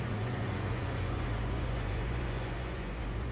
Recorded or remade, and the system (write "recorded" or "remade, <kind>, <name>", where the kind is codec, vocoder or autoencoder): remade, vocoder, Vocos